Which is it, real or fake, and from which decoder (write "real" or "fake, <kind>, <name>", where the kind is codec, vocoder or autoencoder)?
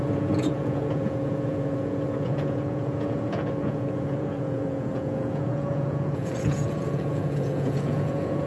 fake, vocoder, Vocos